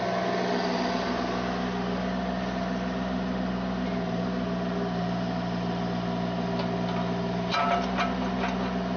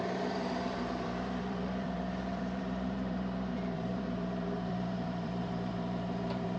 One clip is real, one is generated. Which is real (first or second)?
first